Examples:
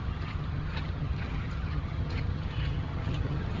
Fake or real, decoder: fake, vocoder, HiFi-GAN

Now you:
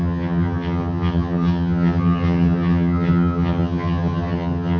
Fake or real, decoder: fake, vocoder, HiFi-GAN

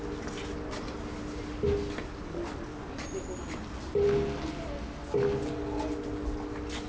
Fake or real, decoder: real